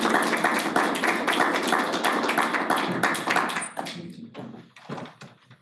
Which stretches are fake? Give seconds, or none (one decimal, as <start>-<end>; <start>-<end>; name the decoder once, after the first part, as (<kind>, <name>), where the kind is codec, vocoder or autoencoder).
none